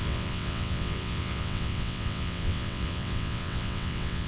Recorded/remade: remade